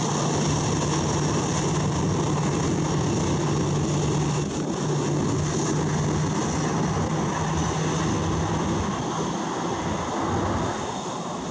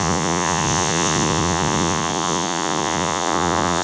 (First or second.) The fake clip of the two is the second